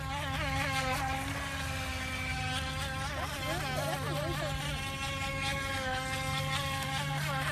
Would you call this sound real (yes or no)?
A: yes